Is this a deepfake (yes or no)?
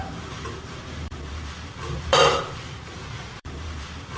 yes